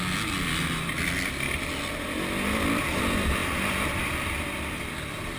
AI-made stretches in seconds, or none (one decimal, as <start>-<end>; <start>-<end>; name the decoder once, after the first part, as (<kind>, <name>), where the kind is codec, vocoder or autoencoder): none